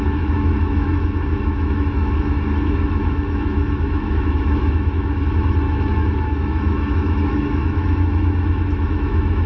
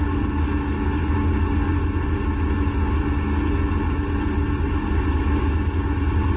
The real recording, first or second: second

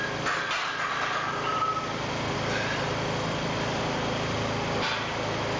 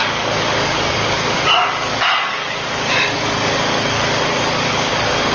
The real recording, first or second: first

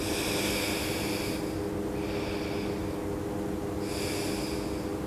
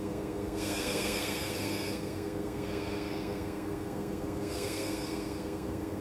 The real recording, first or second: first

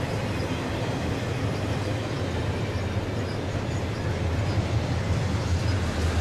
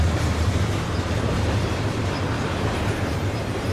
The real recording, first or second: first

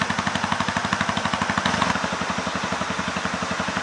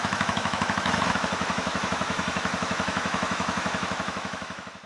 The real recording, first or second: first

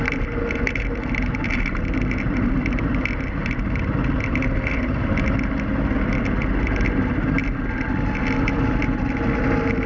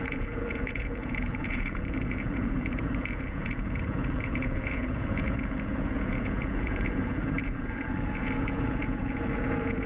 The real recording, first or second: first